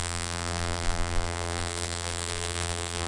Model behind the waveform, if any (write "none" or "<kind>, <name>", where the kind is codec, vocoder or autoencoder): vocoder, BigVGAN v2